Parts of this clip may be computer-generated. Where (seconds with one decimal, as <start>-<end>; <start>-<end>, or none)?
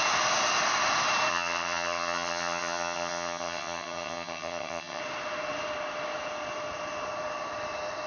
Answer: 1.3-5.0